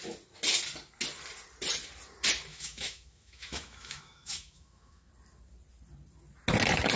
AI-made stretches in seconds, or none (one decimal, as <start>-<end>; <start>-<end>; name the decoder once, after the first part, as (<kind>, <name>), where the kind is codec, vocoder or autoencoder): 2.5-5.1 (autoencoder, DAC-VAE)

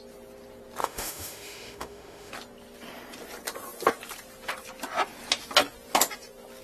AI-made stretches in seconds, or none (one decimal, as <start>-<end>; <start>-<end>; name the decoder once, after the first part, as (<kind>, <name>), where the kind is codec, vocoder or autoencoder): 0.8-2.3 (autoencoder, DAC-VAE)